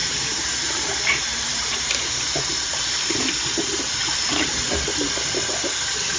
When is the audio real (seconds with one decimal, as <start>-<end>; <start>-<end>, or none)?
3.3-4.0; 4.6-6.2